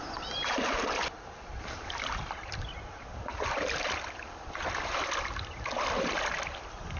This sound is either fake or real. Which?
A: fake